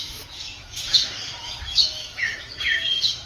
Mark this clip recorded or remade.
remade